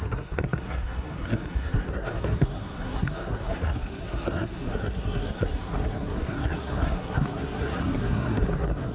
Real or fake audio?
fake